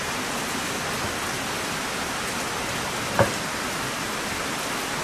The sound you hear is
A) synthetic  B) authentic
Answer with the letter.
B